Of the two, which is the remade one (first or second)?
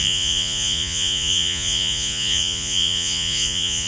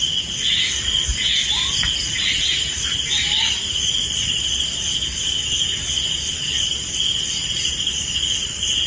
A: first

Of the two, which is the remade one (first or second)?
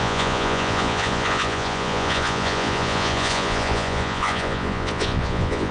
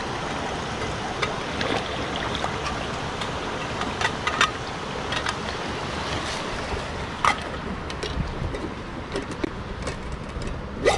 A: first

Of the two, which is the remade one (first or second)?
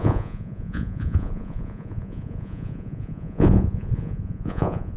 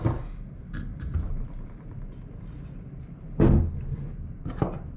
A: first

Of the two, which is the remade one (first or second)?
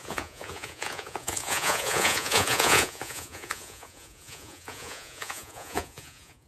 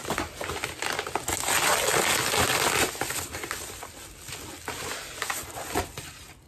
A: first